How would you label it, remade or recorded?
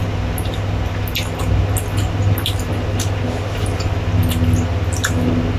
recorded